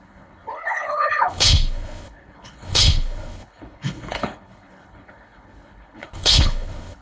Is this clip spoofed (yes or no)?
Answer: yes